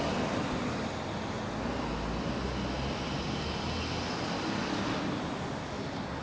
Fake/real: real